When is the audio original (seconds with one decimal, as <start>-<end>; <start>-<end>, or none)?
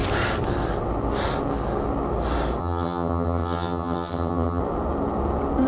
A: 0.0-2.6; 4.6-5.7